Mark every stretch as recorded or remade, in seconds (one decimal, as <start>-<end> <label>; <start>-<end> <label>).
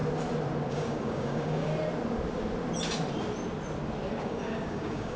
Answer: 0.0-0.7 recorded; 0.7-1.7 remade; 1.7-4.2 recorded; 4.2-5.2 remade